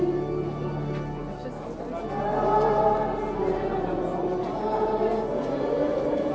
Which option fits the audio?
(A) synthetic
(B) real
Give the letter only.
B